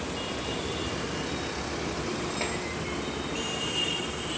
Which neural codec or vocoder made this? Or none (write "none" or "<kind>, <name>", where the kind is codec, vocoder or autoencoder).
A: none